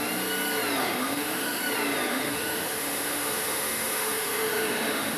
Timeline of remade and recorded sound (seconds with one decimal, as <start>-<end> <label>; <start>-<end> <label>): 0.0-0.8 recorded; 0.8-1.6 remade; 1.6-2.1 recorded; 2.1-5.2 remade